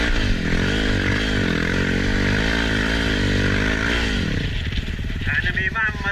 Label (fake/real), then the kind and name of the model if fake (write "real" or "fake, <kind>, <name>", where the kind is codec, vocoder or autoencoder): real